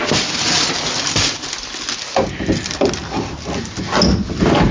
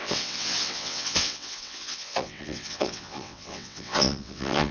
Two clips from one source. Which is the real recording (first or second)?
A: first